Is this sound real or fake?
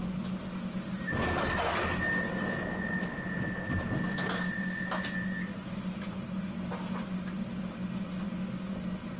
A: real